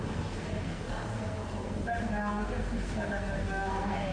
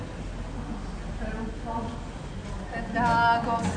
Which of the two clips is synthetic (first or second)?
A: first